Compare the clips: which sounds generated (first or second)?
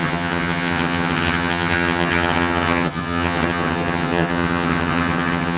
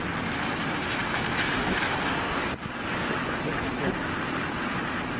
first